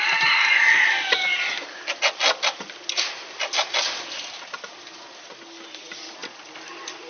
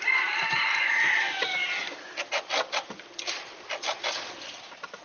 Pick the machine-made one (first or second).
second